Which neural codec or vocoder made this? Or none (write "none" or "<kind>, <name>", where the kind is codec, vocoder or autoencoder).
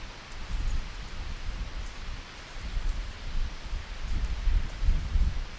none